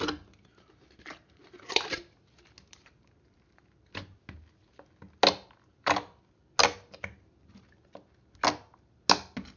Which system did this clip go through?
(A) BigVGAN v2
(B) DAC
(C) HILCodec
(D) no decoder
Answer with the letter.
D